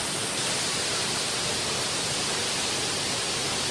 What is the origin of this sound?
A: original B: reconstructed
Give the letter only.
A